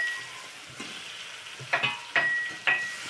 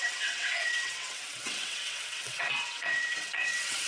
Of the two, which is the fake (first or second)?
second